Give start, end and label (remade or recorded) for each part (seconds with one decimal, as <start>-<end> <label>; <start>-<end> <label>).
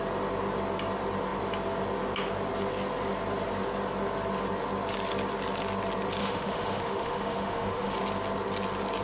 0.0-6.2 recorded; 6.2-7.9 remade; 7.9-9.0 recorded